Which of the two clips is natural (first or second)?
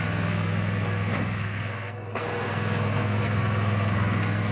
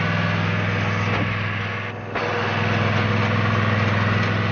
second